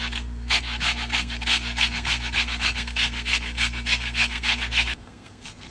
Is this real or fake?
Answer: fake